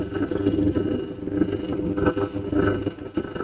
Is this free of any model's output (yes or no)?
yes